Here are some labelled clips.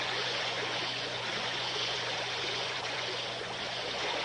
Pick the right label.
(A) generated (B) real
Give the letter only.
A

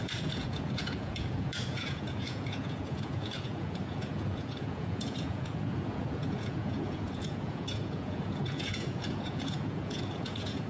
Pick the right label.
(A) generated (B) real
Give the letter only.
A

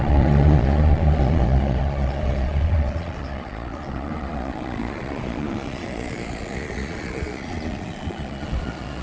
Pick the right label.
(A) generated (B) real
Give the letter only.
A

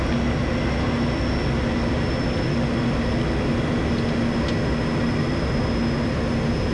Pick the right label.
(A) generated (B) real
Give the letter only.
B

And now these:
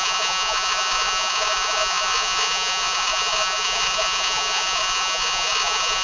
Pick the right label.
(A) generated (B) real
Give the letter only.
A